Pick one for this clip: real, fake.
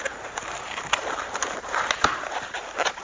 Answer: fake